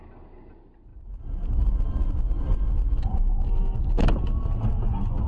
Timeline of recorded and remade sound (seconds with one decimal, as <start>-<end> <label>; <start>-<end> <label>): 0.0-5.3 recorded

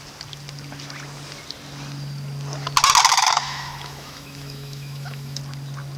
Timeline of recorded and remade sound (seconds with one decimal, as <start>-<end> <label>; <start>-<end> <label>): 0.0-3.1 recorded; 3.1-5.4 remade; 5.4-6.0 recorded

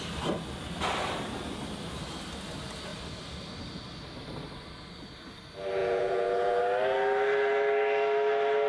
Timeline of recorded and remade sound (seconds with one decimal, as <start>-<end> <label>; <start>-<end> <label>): 0.0-5.8 recorded; 5.8-6.6 remade; 6.6-8.7 recorded

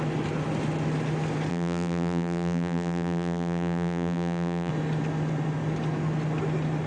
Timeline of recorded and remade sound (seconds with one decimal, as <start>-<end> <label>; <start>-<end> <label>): 0.0-1.5 recorded; 1.5-4.7 remade; 4.7-6.9 recorded

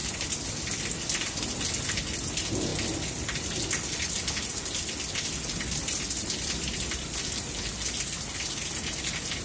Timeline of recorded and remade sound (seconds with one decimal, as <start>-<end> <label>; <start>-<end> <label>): 0.0-9.4 recorded

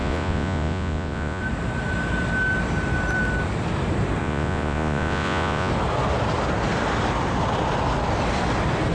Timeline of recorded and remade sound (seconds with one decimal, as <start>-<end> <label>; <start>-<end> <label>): 0.0-1.4 remade; 1.4-4.2 recorded; 4.2-5.7 remade; 5.7-8.9 recorded

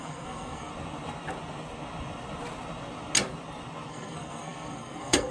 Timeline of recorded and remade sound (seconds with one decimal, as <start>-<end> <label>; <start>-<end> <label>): 0.0-0.7 remade; 0.7-3.9 recorded; 3.9-5.3 remade